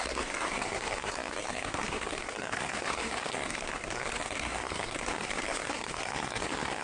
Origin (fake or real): fake